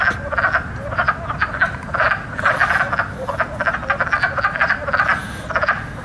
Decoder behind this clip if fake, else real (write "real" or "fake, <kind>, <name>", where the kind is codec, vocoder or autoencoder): real